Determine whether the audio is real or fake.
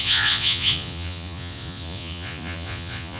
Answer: fake